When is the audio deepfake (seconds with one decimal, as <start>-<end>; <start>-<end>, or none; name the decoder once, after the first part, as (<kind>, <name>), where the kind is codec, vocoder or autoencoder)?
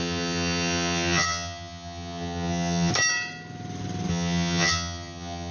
0.0-2.9 (vocoder, HiFi-GAN); 4.1-5.5